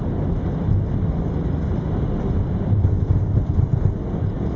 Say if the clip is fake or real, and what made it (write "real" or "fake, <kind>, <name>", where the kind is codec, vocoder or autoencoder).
real